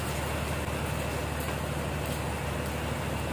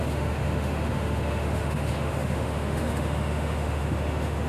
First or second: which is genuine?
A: first